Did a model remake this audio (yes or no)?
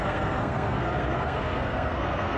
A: yes